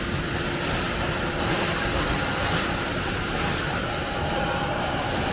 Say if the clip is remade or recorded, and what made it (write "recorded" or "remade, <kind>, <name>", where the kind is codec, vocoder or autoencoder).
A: recorded